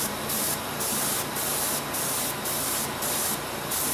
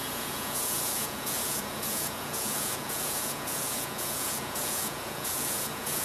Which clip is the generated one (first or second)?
second